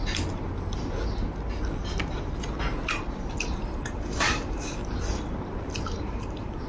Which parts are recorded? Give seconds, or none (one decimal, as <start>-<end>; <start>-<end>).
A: 0.0-3.4; 4.8-6.0